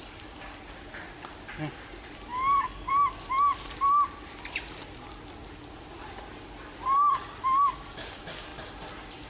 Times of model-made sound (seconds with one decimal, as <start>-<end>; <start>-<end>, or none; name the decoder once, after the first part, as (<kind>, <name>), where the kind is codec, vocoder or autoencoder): 2.3-2.9 (codec, DAC)